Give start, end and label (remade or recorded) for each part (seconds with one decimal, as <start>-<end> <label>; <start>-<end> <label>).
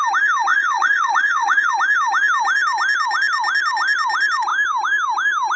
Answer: 0.0-0.5 recorded; 0.5-1.7 remade; 1.7-5.6 recorded